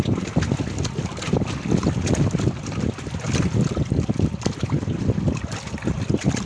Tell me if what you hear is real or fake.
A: real